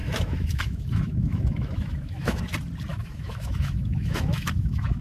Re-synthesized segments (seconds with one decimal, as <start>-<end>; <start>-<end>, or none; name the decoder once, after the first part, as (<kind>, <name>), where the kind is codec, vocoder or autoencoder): 0.0-2.4 (autoencoder, DAC-VAE); 2.9-5.0